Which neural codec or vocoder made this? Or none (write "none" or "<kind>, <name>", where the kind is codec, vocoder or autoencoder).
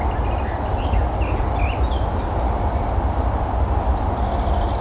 none